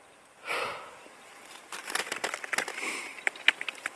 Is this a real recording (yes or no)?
yes